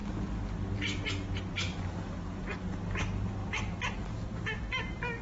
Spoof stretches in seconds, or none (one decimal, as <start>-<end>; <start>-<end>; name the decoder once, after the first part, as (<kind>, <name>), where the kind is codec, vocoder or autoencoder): none